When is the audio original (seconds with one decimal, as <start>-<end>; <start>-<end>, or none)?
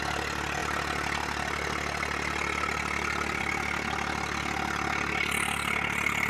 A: 0.0-6.3